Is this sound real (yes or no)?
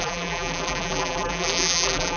no